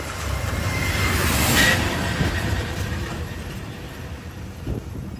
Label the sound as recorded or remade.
remade